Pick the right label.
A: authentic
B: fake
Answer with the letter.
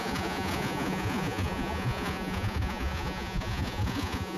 B